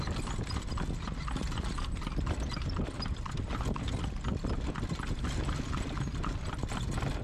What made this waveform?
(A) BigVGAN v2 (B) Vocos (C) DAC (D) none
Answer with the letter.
D